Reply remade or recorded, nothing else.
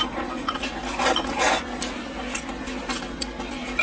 recorded